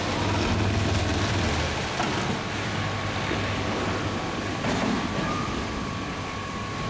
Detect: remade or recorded recorded